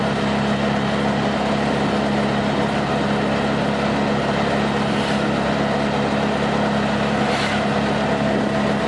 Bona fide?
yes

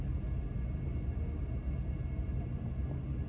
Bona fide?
yes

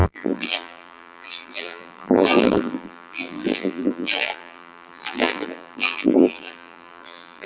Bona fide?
no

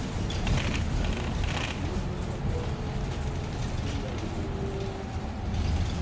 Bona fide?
yes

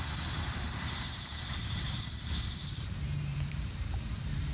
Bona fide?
no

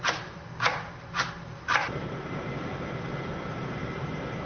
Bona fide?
no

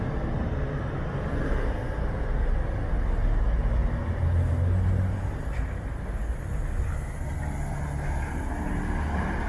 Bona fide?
yes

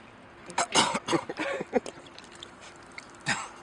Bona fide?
no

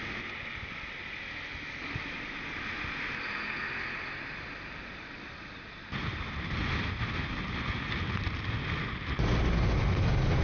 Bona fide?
yes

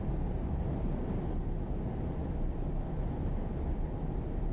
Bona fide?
yes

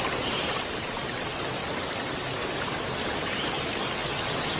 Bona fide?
yes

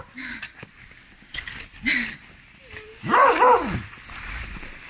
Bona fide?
yes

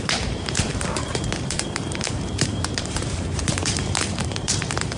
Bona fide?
no